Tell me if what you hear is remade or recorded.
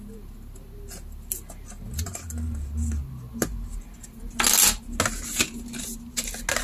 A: recorded